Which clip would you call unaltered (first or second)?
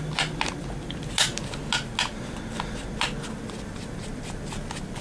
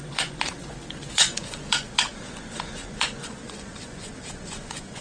first